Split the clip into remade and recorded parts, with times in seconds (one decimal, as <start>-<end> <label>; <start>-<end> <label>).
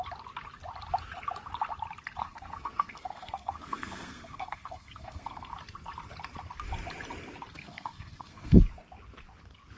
0.0-2.2 recorded; 2.2-5.5 remade; 5.5-7.6 recorded; 7.6-8.6 remade; 8.6-9.8 recorded